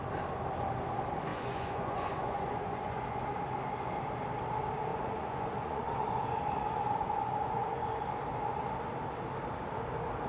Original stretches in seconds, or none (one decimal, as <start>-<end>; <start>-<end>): 0.0-1.3; 3.2-4.9; 8.0-10.3